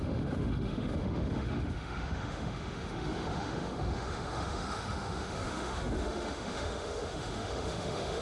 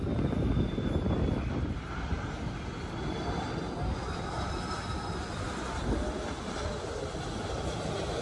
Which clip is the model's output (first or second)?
first